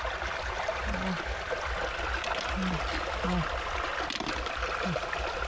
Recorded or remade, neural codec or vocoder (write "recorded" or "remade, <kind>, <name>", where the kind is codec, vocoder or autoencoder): recorded